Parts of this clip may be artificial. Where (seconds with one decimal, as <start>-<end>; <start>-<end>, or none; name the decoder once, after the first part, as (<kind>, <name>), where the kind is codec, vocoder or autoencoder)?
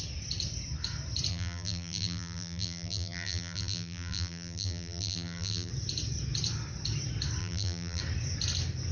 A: 1.3-5.7 (vocoder, BigVGAN v2); 7.4-8.0